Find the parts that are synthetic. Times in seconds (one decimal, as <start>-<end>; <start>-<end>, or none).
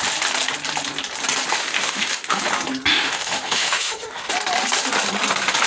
1.5-2.4; 2.9-4.3